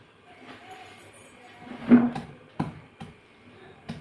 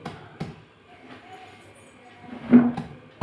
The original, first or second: second